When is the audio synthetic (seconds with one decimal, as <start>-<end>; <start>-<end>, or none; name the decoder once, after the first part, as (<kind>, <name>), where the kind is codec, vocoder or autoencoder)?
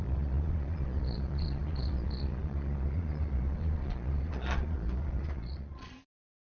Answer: 0.0-6.4 (vocoder, Vocos)